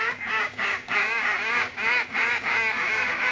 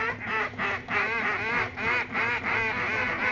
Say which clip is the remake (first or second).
first